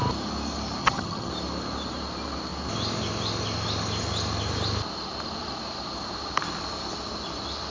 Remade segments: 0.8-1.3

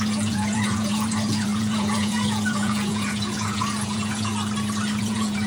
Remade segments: 0.0-4.3; 5.0-5.5

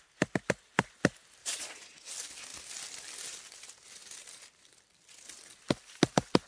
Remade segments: 1.4-2.1

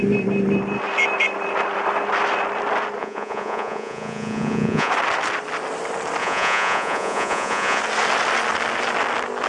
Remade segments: 3.0-4.9; 6.2-7.8

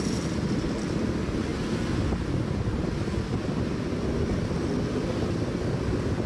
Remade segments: none

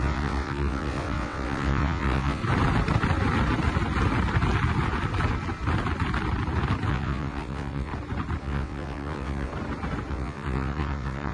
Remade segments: 0.0-2.4; 6.9-7.9; 8.4-9.5; 10.1-11.3